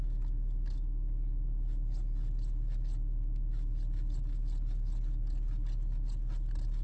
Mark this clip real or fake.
real